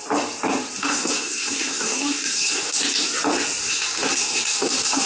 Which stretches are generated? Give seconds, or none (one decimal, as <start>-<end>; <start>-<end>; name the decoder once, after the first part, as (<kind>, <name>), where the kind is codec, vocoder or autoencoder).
0.8-2.8 (codec, SNAC); 3.6-5.1

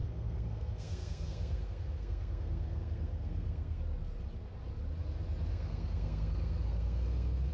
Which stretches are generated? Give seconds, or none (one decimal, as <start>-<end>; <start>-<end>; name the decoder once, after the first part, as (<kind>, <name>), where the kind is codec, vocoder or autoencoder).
0.0-3.8 (codec, SNAC); 5.5-7.5

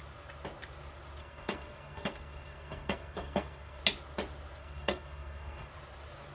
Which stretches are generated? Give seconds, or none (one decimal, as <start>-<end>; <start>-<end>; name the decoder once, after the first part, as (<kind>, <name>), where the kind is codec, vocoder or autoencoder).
1.2-3.8 (codec, SNAC); 4.6-5.7

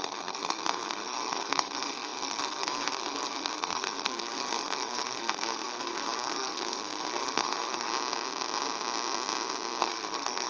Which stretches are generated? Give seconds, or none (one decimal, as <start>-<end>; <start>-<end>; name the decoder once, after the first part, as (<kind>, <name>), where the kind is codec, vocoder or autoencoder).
0.0-7.9 (codec, SNAC); 9.8-10.5